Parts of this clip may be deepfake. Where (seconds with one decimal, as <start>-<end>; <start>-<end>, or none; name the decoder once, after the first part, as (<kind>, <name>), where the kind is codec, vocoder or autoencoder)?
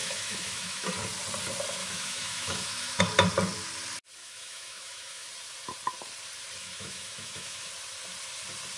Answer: 0.0-0.9 (autoencoder, DAC-VAE); 1.8-3.0; 4.2-5.3; 6.6-7.7